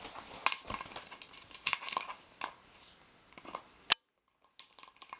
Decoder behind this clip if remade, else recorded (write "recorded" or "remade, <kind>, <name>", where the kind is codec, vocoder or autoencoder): recorded